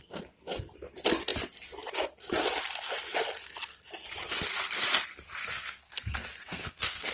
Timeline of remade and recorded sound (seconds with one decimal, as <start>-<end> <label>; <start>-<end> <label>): 0.0-5.4 recorded; 5.4-7.1 remade